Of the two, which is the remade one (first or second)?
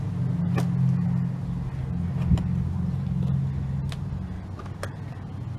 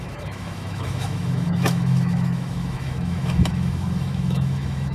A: second